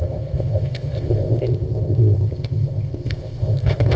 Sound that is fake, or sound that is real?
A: fake